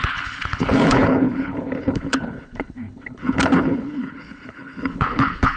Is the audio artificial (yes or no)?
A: yes